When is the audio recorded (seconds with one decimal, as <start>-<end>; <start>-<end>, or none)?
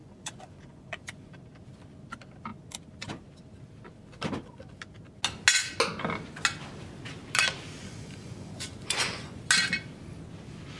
1.3-7.8; 9.4-10.8